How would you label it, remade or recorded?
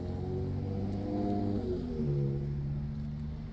recorded